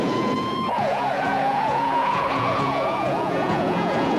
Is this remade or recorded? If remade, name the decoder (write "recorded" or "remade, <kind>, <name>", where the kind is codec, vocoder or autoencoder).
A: remade, vocoder, Vocos